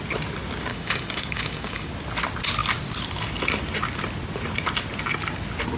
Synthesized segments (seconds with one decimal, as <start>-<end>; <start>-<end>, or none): 0.7-1.9